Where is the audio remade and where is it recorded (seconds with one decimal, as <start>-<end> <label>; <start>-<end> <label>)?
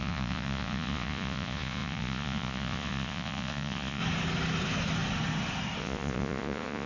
0.0-4.0 remade; 4.0-5.8 recorded; 5.8-6.9 remade